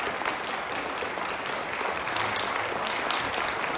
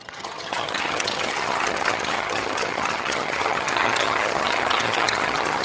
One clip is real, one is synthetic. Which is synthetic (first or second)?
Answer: second